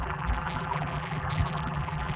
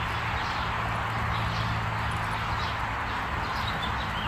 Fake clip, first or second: first